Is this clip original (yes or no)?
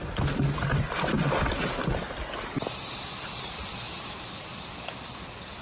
yes